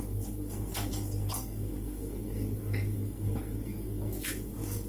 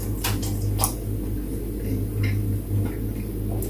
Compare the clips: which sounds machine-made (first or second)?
first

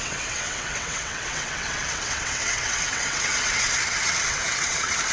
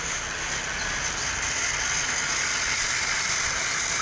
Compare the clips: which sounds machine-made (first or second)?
first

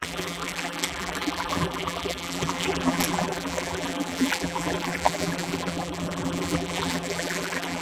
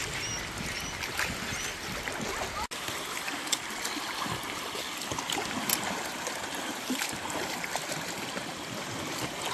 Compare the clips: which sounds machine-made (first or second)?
first